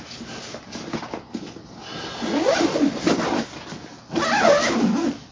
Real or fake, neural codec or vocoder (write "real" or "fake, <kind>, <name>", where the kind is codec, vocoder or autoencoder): real